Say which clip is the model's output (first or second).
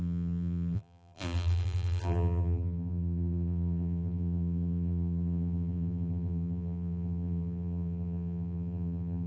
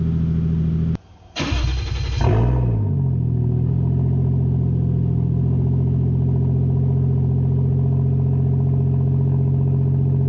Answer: first